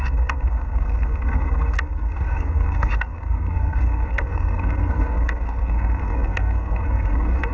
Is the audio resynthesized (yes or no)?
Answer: yes